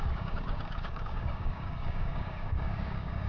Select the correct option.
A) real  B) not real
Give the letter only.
B